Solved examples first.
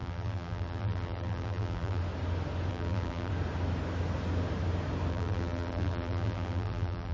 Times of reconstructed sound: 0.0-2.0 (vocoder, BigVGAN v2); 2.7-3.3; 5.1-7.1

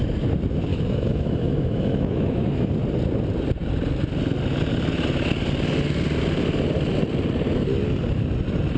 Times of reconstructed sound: 0.7-2.7 (autoencoder, DAC-VAE)